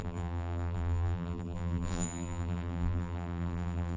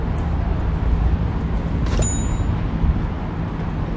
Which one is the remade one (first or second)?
first